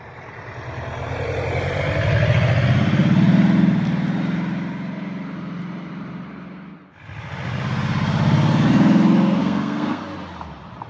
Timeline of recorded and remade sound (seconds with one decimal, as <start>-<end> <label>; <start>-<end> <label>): 0.0-9.4 recorded; 9.4-10.0 remade; 10.0-10.9 recorded

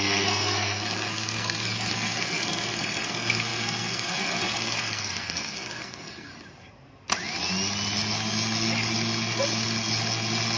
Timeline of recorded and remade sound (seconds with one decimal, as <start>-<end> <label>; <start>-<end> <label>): 0.0-6.3 remade; 6.3-10.6 recorded

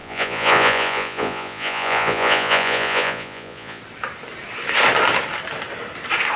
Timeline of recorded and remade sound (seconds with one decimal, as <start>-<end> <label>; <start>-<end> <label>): 0.0-3.8 remade; 3.8-6.4 recorded